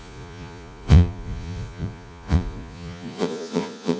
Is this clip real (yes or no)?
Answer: no